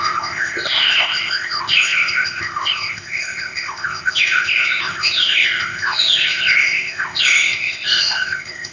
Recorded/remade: remade